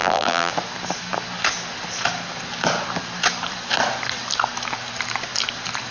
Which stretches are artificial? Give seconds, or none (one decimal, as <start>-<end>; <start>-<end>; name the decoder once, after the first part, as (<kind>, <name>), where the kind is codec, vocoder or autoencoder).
0.0-0.5 (vocoder, BigVGAN v2)